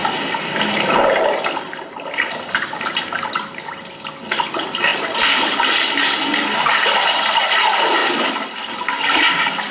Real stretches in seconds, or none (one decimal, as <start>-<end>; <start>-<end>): 0.0-9.7